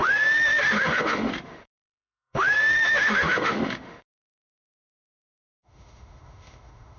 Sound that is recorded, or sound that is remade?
remade